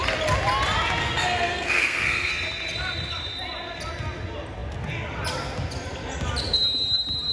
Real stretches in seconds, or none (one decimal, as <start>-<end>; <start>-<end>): 0.0-1.0; 2.3-7.3